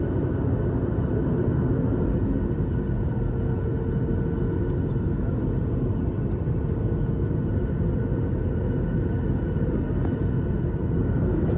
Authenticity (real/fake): real